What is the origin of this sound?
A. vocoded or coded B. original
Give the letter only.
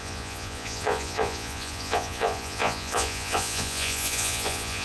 A